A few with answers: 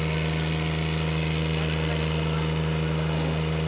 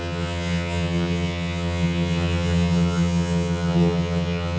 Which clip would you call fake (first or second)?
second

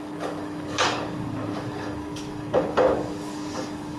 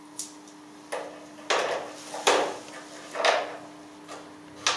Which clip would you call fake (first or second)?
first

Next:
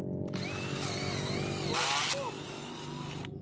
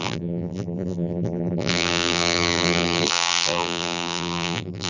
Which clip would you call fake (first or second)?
second